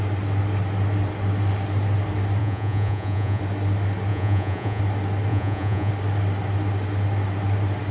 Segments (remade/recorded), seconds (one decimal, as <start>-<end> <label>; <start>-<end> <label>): 0.0-2.4 recorded; 2.4-3.4 remade; 3.4-4.1 recorded; 4.1-4.8 remade; 4.8-5.3 recorded; 5.3-5.9 remade; 5.9-7.9 recorded